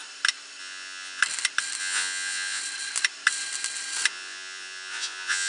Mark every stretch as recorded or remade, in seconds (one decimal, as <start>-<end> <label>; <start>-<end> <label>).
0.0-0.6 recorded; 0.6-1.2 remade; 1.2-1.8 recorded; 1.8-2.6 remade; 2.6-4.1 recorded; 4.1-5.5 remade